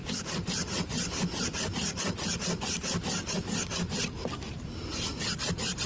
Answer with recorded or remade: recorded